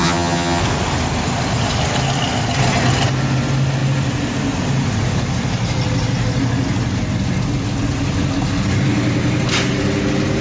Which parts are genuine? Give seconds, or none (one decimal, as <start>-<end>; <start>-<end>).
0.6-10.4